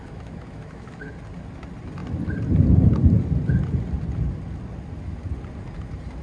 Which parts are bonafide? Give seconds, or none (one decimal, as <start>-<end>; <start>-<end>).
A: 1.0-6.2